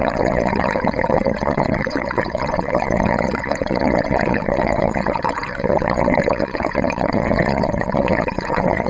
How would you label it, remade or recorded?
remade